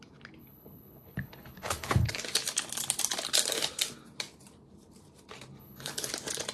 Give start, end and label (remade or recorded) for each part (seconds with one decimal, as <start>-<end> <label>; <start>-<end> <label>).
0.0-0.4 recorded; 0.4-2.2 remade; 2.2-5.6 recorded; 5.6-6.1 remade; 6.1-6.5 recorded